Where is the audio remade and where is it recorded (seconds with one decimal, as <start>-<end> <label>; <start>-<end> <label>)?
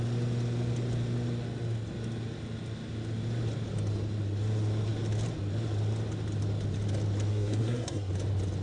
0.0-7.3 recorded; 7.3-8.1 remade; 8.1-8.6 recorded